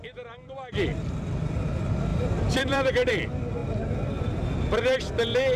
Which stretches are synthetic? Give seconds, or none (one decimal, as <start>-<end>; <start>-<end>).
2.1-3.1